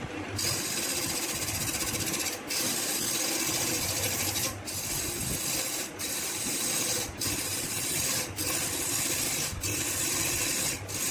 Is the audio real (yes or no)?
yes